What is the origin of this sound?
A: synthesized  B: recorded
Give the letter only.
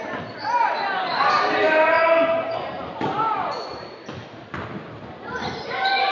B